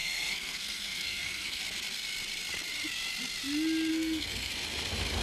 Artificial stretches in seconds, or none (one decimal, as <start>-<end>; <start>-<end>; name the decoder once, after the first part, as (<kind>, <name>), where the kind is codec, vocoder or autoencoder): 0.0-1.6 (codec, SNAC); 3.9-4.5